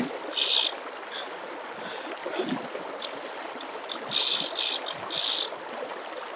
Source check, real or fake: real